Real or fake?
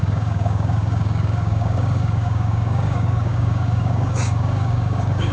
fake